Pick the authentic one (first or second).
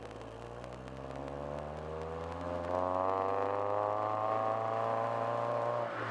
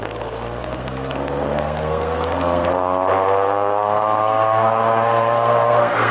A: first